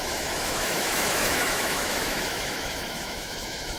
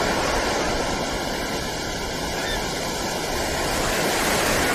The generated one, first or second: first